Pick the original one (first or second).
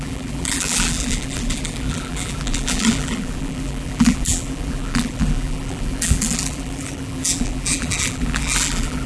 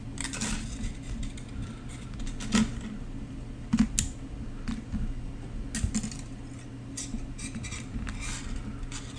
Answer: second